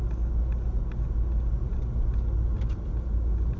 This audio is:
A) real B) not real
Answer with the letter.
A